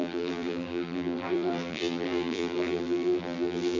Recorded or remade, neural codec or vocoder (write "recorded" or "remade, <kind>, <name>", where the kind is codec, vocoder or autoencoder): remade, vocoder, BigVGAN v2